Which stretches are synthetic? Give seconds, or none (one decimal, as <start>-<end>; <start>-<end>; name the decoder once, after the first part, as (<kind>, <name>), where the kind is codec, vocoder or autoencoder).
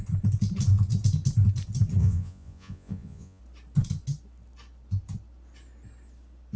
2.0-3.4 (vocoder, Vocos)